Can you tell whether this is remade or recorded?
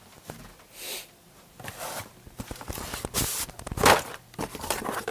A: remade